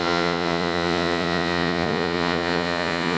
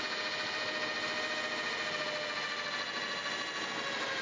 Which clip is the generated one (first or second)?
first